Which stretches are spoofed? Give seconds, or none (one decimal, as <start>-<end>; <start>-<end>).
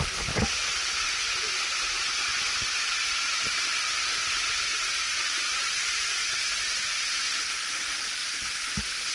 none